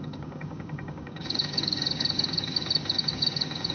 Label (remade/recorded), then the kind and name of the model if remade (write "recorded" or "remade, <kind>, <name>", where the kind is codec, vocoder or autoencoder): remade, codec, DAC